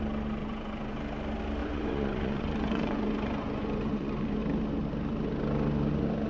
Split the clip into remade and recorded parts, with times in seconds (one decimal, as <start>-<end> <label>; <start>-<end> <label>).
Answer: 0.0-0.4 recorded; 0.4-1.0 remade; 1.0-1.6 recorded; 1.6-4.4 remade; 4.4-6.3 recorded